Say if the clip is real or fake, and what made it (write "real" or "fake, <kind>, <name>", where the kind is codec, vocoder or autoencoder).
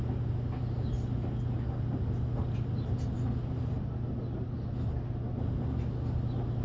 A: real